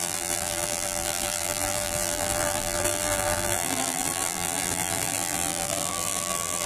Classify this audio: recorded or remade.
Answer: remade